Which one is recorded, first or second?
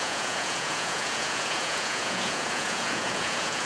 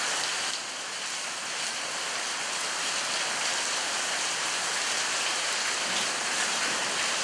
second